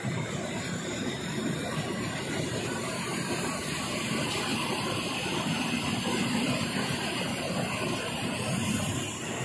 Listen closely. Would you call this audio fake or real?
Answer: fake